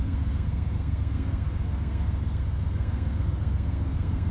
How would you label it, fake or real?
fake